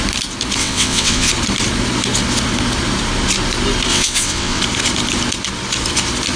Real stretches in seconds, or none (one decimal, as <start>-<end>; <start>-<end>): 0.0-0.6; 1.3-3.9; 4.6-6.4